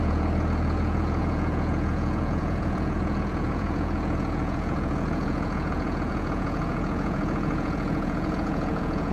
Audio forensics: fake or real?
fake